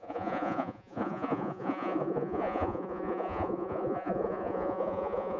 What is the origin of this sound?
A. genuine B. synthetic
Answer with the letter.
B